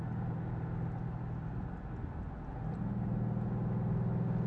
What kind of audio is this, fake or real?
real